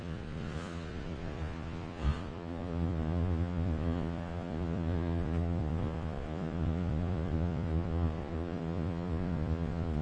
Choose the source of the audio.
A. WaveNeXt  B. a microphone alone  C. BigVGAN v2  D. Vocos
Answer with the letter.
D